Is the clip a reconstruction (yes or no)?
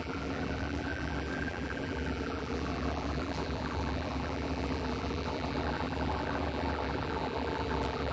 yes